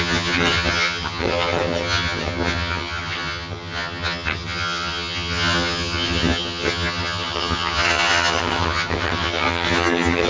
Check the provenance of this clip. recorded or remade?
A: remade